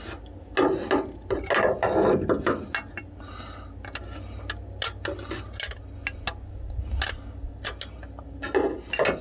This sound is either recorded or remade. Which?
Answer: recorded